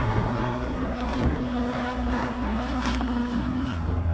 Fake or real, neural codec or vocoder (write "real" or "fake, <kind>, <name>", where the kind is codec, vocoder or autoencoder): fake, codec, SNAC